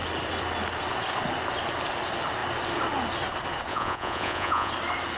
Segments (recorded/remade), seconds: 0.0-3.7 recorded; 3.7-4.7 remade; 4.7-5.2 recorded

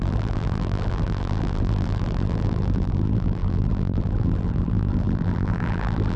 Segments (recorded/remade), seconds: 0.0-6.2 remade